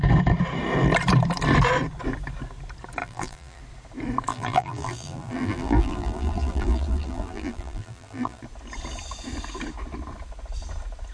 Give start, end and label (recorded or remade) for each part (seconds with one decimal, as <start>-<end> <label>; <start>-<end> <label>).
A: 0.0-3.0 recorded; 3.0-3.6 remade; 3.6-4.3 recorded; 4.3-8.4 remade; 8.4-11.1 recorded